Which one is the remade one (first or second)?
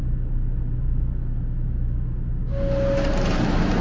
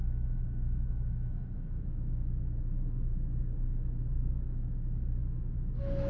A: second